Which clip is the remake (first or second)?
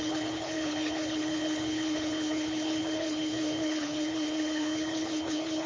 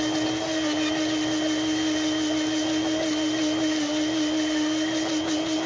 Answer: first